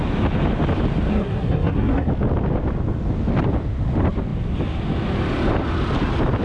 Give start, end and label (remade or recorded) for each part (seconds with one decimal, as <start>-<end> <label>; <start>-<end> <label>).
0.0-1.1 recorded; 1.1-2.1 remade; 2.1-6.4 recorded